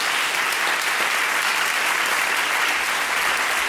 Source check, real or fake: real